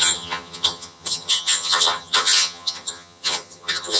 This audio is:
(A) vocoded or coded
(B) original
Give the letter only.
A